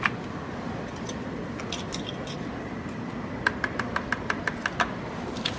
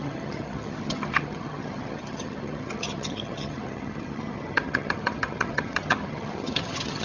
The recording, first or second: first